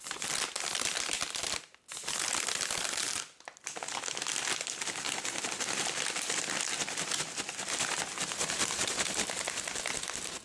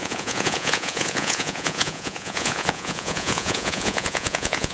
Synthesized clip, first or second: second